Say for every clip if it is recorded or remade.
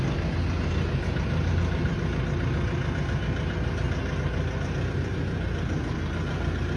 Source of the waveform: recorded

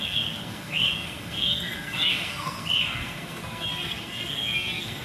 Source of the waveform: remade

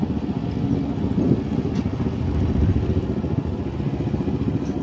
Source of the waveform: recorded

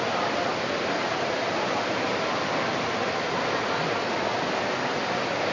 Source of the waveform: recorded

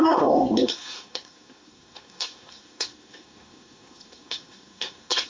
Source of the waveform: remade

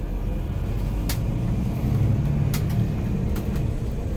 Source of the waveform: recorded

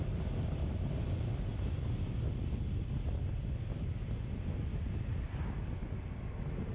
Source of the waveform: recorded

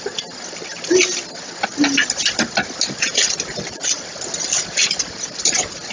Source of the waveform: recorded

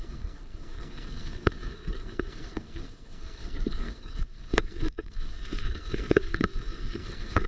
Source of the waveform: remade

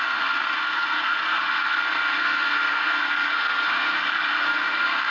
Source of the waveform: remade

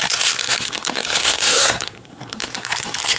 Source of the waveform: remade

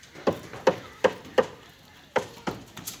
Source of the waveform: recorded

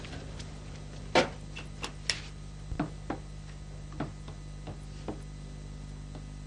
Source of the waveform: recorded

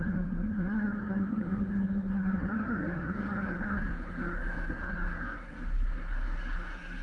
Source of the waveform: remade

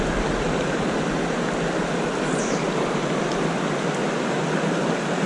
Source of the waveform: recorded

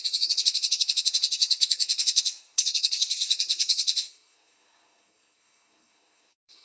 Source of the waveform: remade